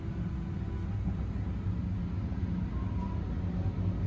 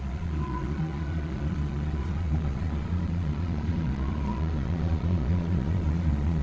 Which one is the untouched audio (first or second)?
first